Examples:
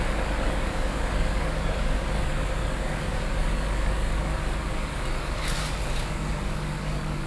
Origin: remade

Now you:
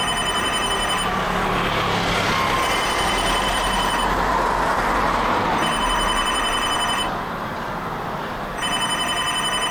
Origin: remade